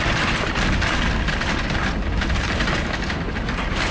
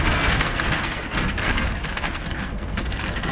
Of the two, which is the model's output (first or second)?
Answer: second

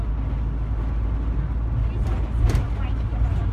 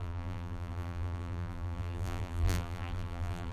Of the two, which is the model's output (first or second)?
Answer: second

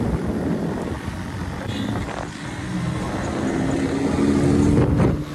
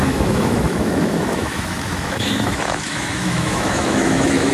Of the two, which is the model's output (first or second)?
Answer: second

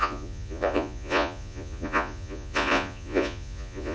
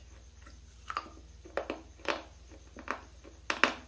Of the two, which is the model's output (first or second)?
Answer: first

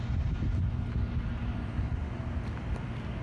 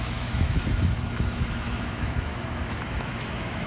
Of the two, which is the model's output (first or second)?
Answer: second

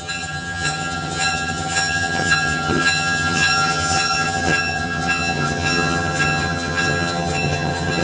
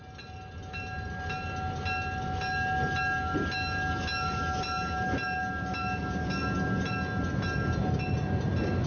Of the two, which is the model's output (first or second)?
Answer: first